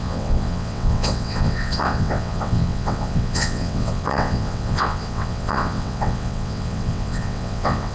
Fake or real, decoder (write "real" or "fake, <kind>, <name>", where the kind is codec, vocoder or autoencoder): fake, vocoder, WaveNeXt